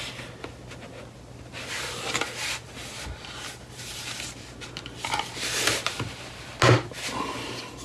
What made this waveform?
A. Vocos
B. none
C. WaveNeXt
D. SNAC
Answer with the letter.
B